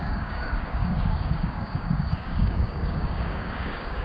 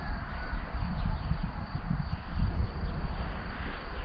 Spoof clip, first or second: first